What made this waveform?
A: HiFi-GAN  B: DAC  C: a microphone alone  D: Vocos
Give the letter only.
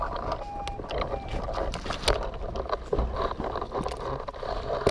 C